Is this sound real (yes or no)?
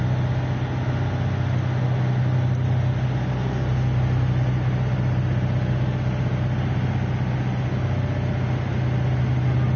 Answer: yes